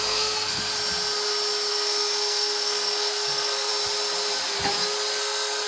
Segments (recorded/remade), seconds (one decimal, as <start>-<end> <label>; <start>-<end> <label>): 0.0-0.7 remade; 0.7-1.7 recorded; 1.7-3.7 remade; 3.7-5.2 recorded; 5.2-5.7 remade